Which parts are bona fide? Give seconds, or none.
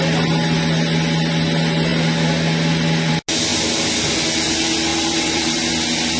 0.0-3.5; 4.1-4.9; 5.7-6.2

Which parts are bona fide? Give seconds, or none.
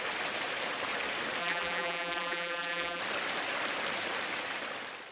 0.0-1.4; 3.0-5.1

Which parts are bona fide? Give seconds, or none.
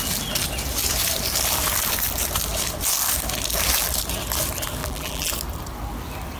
0.0-4.8; 5.3-6.4